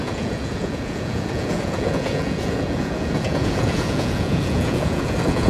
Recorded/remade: remade